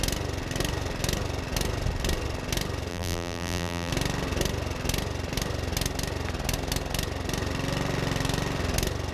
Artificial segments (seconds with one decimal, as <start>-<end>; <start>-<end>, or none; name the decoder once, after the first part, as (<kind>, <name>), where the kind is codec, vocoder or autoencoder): 2.9-3.9 (vocoder, BigVGAN v2)